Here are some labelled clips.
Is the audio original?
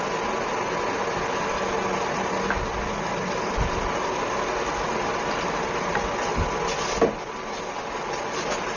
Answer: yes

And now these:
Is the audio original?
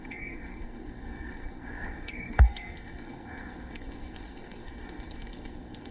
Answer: no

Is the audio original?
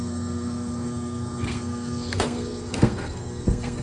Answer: no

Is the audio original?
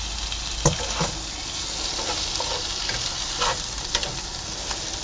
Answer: yes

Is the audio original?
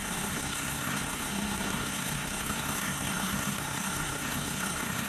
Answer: no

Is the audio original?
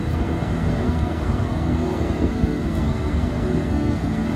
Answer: no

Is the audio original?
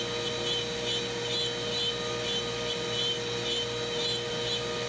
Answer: yes